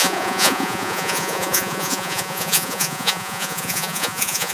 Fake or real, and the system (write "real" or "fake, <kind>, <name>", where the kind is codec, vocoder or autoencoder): fake, vocoder, Vocos